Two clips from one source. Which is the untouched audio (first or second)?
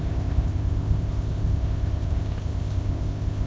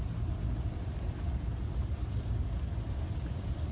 second